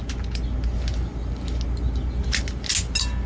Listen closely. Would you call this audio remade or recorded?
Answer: recorded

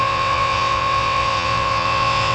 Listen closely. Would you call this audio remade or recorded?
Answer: remade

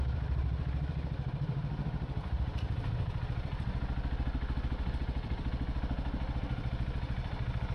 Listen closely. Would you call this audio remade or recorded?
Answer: remade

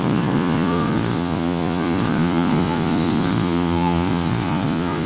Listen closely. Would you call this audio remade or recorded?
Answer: remade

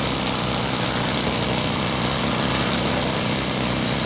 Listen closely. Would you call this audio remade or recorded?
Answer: recorded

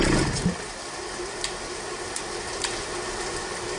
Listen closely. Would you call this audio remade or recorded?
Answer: recorded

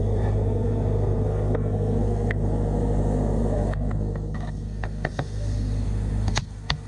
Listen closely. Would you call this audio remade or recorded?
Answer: remade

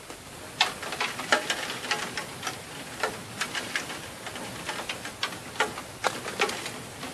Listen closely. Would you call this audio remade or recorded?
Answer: remade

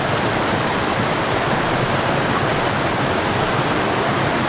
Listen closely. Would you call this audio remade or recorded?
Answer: recorded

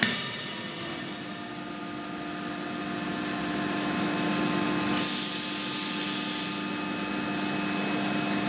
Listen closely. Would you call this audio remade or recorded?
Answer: recorded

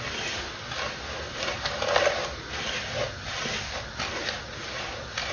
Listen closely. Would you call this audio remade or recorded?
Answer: recorded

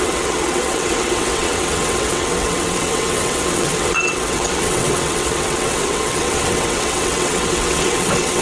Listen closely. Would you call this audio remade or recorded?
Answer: remade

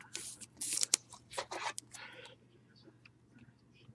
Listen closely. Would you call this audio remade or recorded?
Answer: recorded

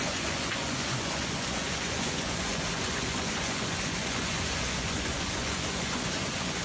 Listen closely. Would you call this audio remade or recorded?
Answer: remade